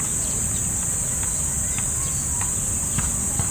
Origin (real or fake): real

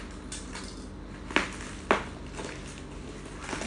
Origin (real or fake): real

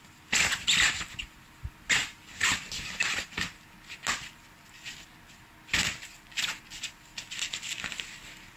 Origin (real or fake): real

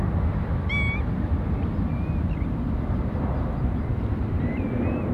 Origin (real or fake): real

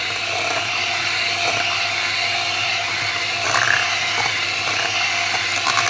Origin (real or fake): real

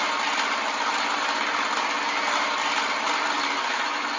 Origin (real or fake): real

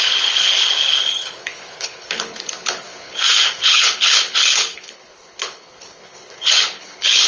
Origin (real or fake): fake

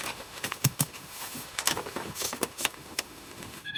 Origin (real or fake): fake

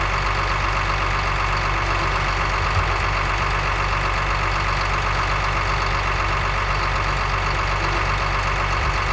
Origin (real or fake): real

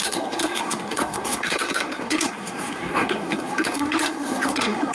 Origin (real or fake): fake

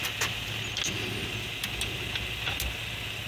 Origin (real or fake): real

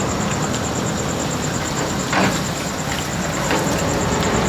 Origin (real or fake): fake